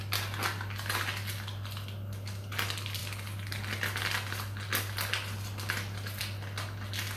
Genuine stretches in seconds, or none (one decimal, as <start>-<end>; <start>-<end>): 0.0-7.2